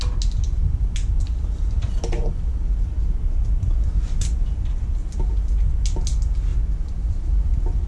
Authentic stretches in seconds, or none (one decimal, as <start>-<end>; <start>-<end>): 0.0-7.9